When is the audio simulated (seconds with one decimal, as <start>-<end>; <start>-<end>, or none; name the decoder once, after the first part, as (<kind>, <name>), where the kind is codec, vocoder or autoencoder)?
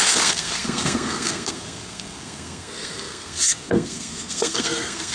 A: 0.0-5.1 (codec, SNAC)